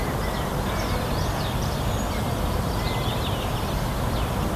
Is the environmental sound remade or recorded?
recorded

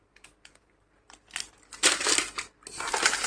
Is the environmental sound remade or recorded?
recorded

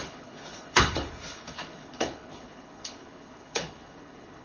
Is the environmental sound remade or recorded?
remade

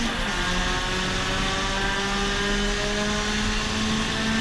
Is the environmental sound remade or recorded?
recorded